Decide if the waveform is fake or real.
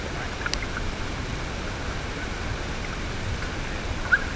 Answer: real